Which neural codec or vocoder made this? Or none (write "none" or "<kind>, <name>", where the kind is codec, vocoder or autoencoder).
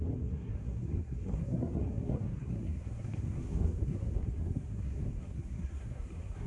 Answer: codec, SNAC